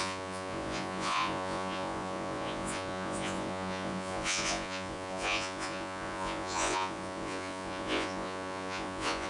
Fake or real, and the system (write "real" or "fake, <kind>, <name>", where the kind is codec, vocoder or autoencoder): fake, vocoder, Vocos